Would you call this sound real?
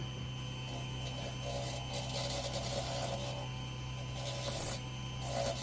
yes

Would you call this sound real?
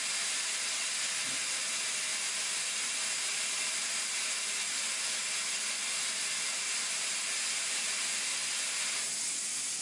yes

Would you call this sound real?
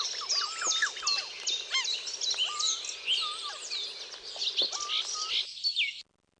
yes